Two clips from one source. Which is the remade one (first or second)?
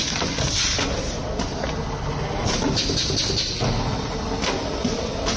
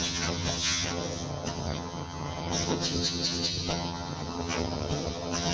second